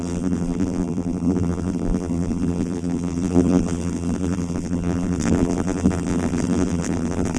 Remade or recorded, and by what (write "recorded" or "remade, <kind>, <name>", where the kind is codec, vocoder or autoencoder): remade, vocoder, BigVGAN v2